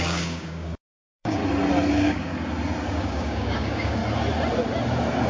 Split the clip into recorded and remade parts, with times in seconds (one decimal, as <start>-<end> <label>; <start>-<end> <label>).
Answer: 0.0-1.4 remade; 1.4-1.9 recorded; 1.9-2.3 remade; 2.3-2.9 recorded; 2.9-4.0 remade; 4.0-5.3 recorded